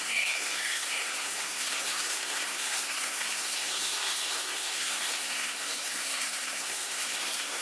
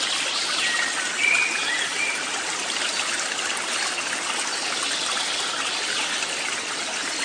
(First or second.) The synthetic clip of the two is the first